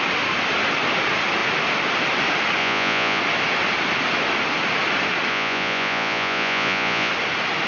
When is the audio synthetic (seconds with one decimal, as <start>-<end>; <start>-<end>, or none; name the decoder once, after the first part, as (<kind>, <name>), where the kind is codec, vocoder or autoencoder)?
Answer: 2.6-3.2 (vocoder, Vocos); 5.3-7.1